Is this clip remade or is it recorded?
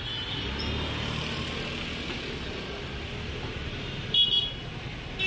recorded